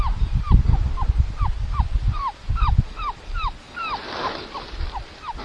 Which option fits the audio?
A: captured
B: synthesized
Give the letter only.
B